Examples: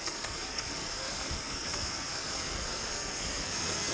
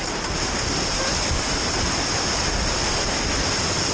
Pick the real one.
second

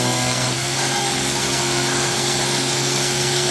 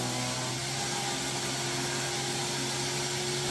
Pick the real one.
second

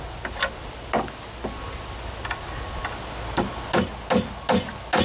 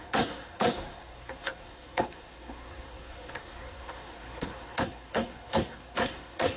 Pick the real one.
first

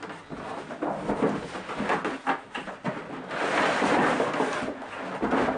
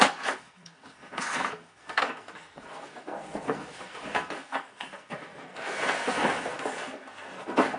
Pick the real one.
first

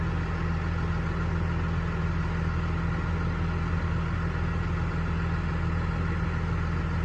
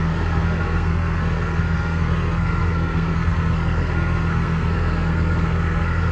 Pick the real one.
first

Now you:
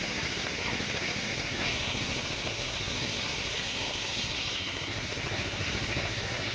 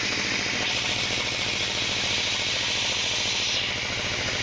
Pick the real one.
second